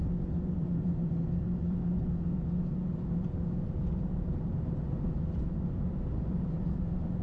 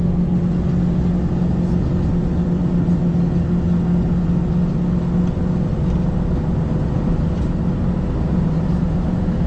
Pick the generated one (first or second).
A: first